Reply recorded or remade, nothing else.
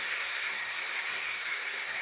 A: remade